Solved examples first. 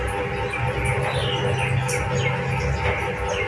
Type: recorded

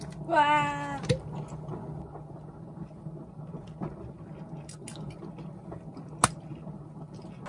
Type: recorded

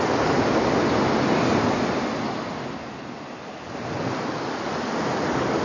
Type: recorded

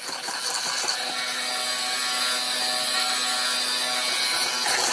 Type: recorded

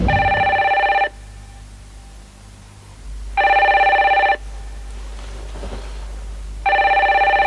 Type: recorded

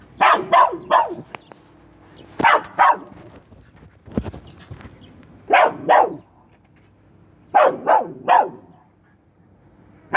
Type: recorded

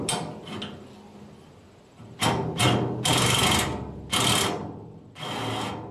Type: recorded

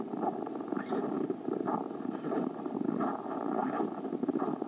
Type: remade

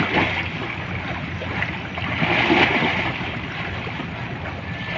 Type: recorded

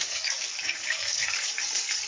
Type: remade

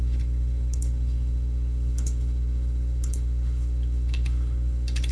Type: remade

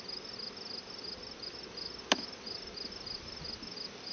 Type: recorded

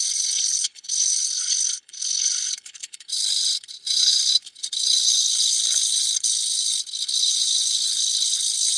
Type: remade